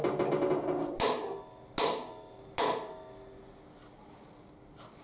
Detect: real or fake real